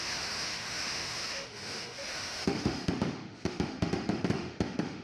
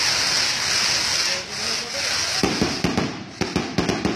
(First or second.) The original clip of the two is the second